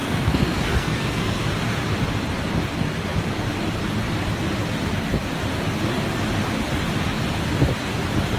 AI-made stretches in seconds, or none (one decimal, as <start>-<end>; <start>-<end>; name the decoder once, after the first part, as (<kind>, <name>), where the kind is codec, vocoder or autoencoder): 0.0-1.4 (codec, SNAC)